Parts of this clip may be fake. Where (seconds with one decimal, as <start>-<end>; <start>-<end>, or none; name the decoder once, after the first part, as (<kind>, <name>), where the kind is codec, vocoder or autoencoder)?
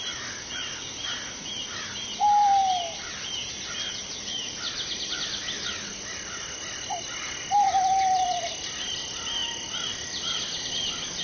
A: none